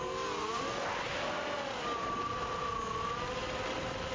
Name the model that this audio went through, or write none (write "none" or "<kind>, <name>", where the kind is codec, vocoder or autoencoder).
none